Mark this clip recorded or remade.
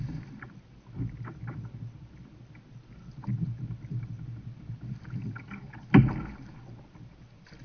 recorded